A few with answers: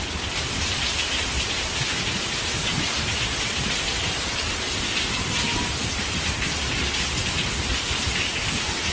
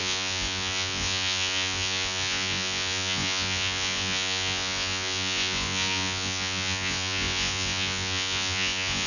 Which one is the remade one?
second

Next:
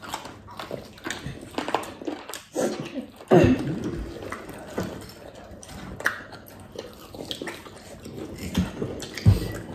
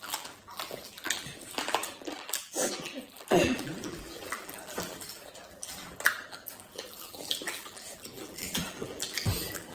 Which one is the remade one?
second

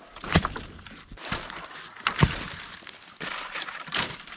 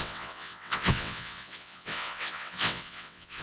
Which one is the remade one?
second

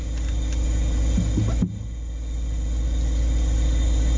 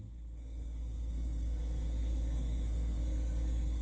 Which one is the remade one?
second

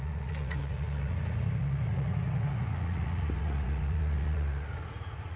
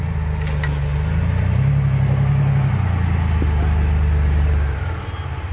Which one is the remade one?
first